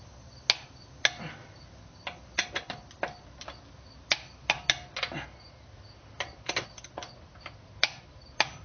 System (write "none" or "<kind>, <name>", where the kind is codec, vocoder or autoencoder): none